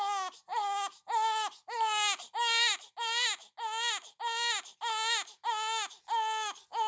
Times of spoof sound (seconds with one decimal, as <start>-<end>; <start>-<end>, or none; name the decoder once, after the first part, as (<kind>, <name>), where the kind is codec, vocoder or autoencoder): none